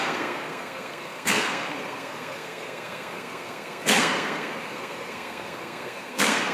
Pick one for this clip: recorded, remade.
remade